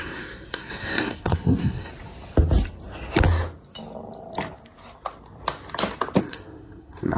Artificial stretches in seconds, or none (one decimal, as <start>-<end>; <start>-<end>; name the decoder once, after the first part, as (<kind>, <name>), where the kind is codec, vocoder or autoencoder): 0.0-1.9 (codec, SNAC); 6.2-7.2